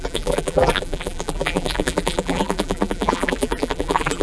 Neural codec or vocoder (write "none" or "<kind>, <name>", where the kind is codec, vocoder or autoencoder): vocoder, BigVGAN v2